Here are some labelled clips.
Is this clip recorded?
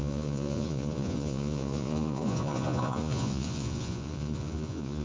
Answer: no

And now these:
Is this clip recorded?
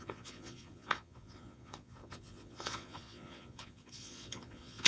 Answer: no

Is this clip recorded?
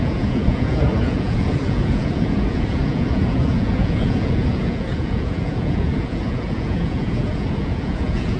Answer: no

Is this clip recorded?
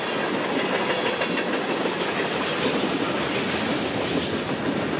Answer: yes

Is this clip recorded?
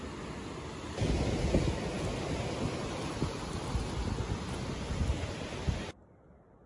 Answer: yes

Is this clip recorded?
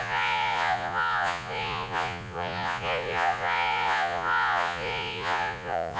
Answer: no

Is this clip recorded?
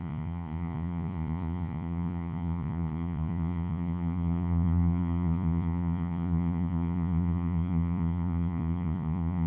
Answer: no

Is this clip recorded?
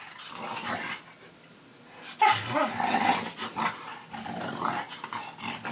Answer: yes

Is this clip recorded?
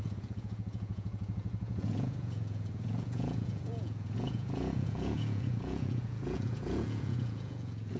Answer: no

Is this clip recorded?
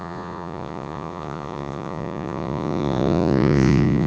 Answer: no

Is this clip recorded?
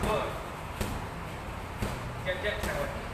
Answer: yes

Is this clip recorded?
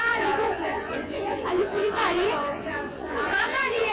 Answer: no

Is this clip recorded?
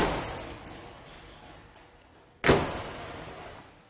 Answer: yes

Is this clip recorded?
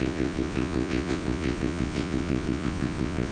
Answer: no